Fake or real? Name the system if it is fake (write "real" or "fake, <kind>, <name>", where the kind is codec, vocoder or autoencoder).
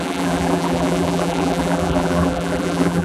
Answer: fake, vocoder, BigVGAN v2